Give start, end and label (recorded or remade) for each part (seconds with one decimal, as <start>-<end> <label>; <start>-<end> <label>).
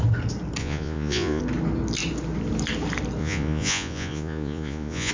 0.0-0.6 recorded; 0.6-1.4 remade; 1.4-3.2 recorded; 3.2-5.1 remade